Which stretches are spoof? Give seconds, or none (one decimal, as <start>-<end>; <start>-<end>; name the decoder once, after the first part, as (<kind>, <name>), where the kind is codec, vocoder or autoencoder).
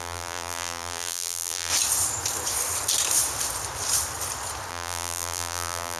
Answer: 0.0-1.7 (vocoder, BigVGAN v2); 4.7-6.0